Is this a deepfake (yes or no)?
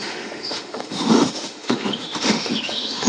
yes